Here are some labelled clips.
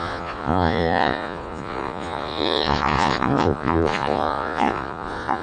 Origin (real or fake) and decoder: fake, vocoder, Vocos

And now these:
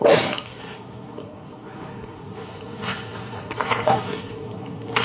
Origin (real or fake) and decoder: fake, codec, SNAC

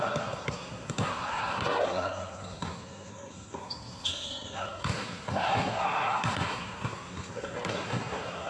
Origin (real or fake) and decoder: fake, codec, SNAC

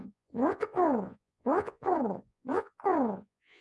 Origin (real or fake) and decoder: fake, vocoder, Vocos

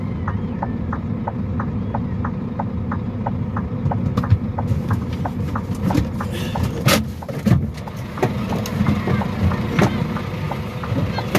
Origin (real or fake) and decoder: real